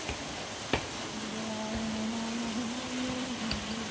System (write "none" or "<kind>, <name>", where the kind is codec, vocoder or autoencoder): none